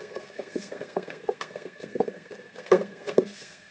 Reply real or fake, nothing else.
fake